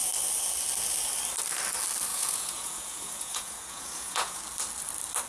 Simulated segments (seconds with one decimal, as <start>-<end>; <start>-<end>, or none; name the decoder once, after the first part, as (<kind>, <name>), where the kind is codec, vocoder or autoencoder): 2.1-4.4 (vocoder, Vocos)